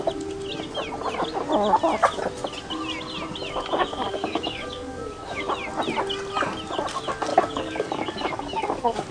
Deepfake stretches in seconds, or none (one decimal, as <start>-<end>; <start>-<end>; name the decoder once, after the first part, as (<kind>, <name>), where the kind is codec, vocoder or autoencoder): 3.9-5.4 (codec, DAC); 7.3-9.1